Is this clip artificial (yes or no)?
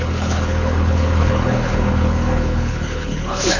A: yes